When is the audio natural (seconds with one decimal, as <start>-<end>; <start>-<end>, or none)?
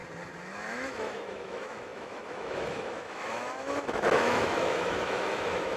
0.0-0.5